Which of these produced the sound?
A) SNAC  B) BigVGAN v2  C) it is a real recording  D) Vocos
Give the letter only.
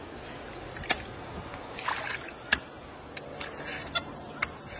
C